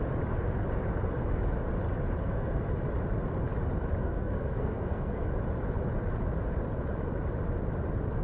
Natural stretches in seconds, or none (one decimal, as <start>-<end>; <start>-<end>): 0.0-2.2; 2.7-4.0; 5.3-8.2